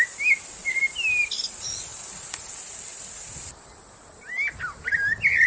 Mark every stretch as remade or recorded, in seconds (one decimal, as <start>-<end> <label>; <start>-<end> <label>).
0.0-5.5 recorded